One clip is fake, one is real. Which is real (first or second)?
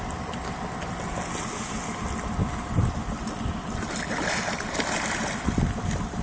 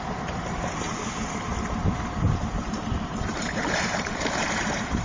first